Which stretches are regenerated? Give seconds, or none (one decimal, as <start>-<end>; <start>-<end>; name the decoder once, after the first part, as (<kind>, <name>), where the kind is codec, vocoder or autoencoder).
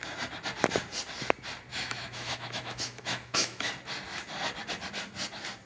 1.7-3.7 (autoencoder, DAC-VAE)